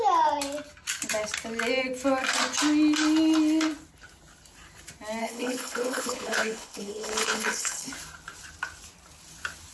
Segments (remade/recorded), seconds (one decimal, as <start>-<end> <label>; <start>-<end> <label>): 0.0-5.2 recorded; 5.2-7.9 remade; 7.9-9.7 recorded